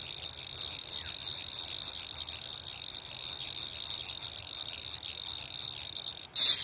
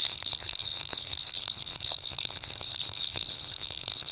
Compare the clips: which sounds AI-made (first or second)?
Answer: second